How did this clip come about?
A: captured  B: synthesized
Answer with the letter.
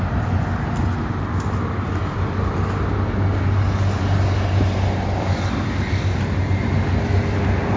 A